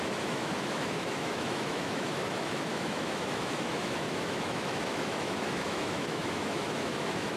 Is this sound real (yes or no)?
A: no